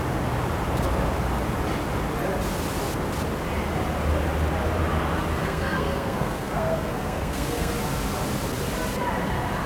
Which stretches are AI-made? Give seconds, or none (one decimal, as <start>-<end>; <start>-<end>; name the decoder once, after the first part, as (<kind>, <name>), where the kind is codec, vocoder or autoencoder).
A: 5.4-7.7 (codec, SNAC)